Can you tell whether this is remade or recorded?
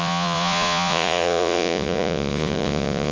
remade